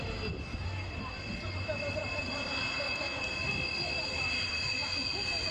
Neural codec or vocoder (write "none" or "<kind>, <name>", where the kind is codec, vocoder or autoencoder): none